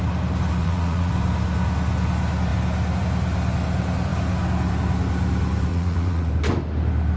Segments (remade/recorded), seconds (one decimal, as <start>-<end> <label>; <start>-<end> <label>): 0.0-0.6 recorded; 0.6-1.1 remade; 1.1-5.7 recorded; 5.7-6.3 remade; 6.3-7.2 recorded